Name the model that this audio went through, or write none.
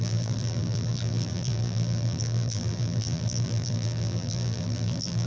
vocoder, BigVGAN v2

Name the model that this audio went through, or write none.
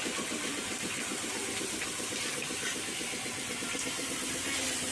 none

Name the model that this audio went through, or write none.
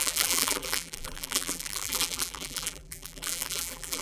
vocoder, BigVGAN v2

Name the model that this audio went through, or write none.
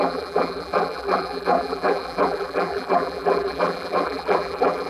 vocoder, BigVGAN v2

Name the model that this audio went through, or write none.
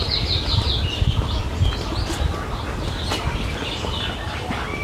none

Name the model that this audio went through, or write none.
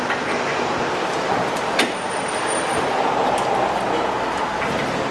none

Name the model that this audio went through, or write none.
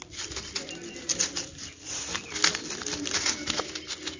none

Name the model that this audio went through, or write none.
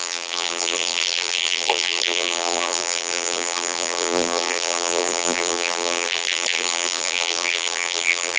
vocoder, BigVGAN v2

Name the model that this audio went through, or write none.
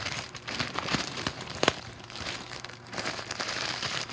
vocoder, BigVGAN v2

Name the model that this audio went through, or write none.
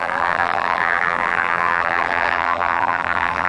vocoder, BigVGAN v2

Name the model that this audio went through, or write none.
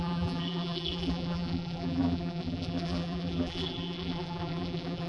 vocoder, BigVGAN v2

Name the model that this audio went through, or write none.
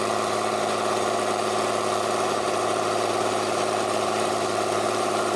vocoder, BigVGAN v2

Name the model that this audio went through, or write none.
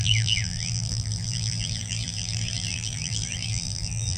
vocoder, BigVGAN v2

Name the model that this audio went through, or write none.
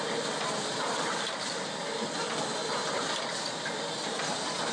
vocoder, BigVGAN v2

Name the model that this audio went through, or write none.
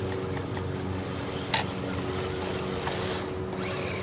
none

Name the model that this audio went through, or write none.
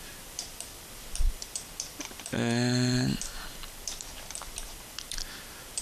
vocoder, BigVGAN v2